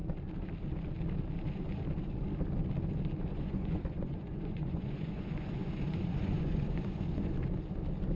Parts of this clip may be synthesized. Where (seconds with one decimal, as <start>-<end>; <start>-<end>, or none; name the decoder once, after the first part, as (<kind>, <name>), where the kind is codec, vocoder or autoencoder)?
3.3-7.3 (vocoder, Vocos)